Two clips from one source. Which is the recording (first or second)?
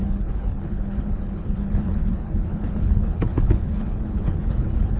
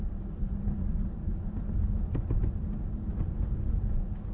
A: second